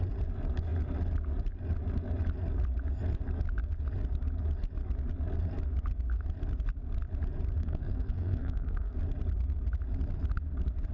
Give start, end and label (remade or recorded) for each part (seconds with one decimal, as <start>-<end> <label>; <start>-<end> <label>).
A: 0.0-7.6 recorded; 7.6-9.0 remade; 9.0-10.9 recorded

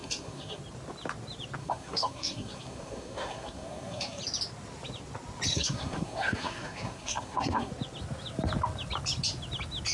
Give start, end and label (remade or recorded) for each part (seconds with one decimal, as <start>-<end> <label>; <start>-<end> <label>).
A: 0.0-0.6 remade; 0.6-1.6 recorded; 1.6-4.2 remade; 4.2-5.5 recorded; 5.5-7.7 remade; 7.7-9.9 recorded

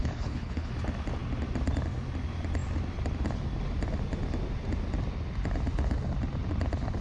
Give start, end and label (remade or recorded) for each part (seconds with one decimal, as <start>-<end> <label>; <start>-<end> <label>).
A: 0.0-0.7 remade; 0.7-7.0 recorded

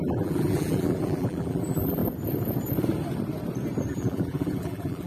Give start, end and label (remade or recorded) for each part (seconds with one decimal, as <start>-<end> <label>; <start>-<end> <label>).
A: 0.0-2.0 remade; 2.0-3.9 recorded; 3.9-5.1 remade

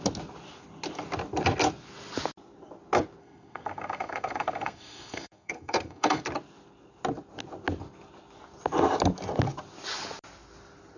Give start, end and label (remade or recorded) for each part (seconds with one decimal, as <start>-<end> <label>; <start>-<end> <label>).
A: 0.0-3.2 recorded; 3.2-6.2 remade; 6.2-11.0 recorded